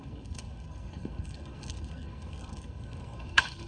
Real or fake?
fake